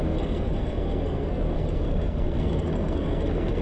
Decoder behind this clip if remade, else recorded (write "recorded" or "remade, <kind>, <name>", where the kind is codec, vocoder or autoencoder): remade, codec, SNAC